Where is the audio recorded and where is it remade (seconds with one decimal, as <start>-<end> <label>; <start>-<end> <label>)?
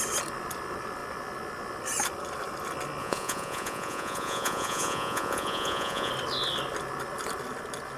0.0-3.0 recorded; 3.0-6.1 remade; 6.1-8.0 recorded